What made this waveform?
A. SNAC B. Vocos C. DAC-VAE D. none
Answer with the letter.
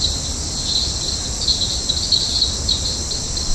D